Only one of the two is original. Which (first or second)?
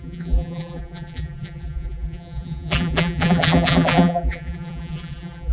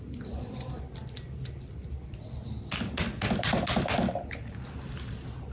second